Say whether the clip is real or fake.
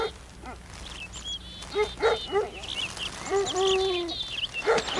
real